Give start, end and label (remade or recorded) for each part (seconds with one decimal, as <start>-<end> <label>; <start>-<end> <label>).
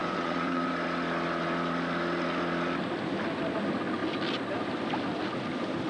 0.0-0.7 remade; 0.7-5.9 recorded